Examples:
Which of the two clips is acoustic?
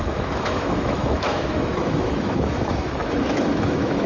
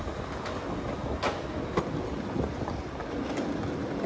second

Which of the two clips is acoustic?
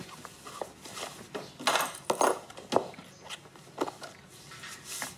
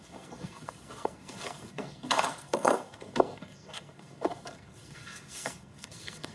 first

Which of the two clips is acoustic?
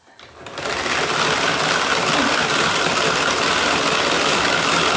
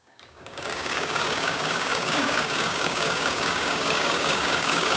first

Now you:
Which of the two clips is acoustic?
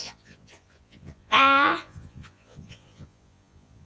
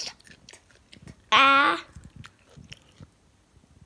second